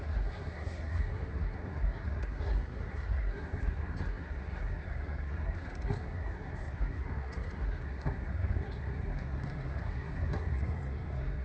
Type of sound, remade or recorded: remade